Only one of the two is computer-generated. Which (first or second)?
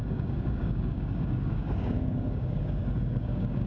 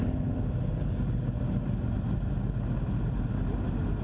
first